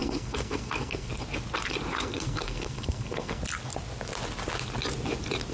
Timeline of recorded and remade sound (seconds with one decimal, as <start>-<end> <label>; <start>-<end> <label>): 0.0-1.1 remade; 1.1-1.9 recorded; 1.9-3.4 remade; 3.4-5.5 recorded